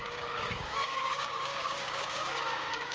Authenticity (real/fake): fake